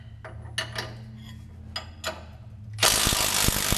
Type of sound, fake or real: real